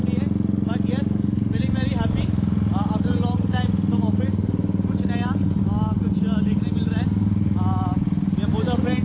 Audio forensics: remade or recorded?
recorded